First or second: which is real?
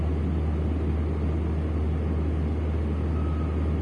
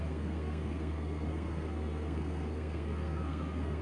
first